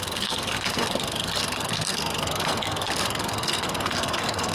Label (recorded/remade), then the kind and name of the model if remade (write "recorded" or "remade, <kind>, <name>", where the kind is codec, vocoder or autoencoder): remade, codec, SNAC